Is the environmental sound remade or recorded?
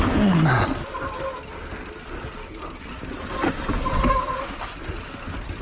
recorded